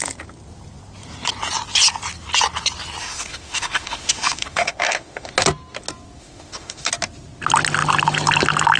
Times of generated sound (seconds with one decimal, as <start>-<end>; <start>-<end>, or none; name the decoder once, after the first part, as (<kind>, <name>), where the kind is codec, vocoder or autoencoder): 3.0-5.3 (autoencoder, DAC-VAE); 6.2-6.9